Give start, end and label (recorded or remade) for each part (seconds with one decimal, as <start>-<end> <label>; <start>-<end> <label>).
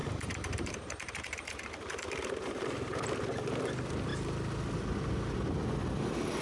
0.0-3.2 remade; 3.2-6.4 recorded